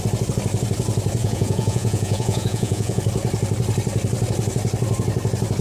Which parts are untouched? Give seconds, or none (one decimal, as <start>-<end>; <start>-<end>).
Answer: 0.0-1.2; 3.0-5.6